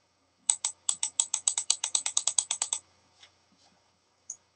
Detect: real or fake fake